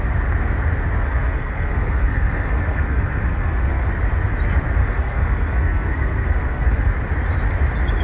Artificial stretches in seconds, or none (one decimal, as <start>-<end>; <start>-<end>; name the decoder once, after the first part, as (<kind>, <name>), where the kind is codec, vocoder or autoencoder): 1.0-3.9 (codec, SNAC); 4.8-6.9